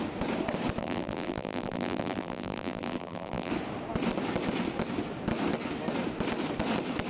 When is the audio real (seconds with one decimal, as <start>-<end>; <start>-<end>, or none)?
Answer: 0.0-0.8; 3.5-7.1